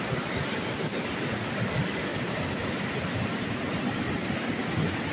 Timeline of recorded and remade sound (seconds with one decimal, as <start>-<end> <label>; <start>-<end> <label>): 0.0-2.1 recorded; 2.1-2.7 remade; 2.7-5.1 recorded